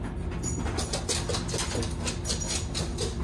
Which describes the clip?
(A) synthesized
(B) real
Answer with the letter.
B